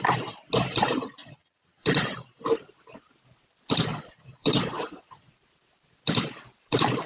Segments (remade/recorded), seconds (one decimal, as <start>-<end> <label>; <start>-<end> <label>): 0.0-1.2 recorded; 1.2-2.0 remade; 2.0-3.9 recorded; 3.9-5.3 remade; 5.3-7.1 recorded